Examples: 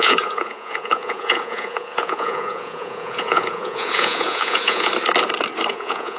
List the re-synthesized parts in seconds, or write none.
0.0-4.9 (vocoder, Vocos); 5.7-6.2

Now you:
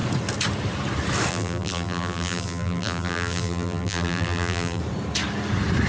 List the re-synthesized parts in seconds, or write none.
1.3-4.8 (vocoder, BigVGAN v2)

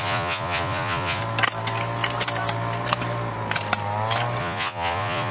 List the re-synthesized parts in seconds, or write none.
0.0-1.2 (vocoder, Vocos); 4.4-5.3

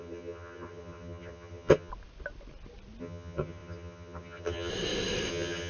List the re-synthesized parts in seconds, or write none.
0.0-1.9 (vocoder, HiFi-GAN); 3.0-4.7; 5.3-5.7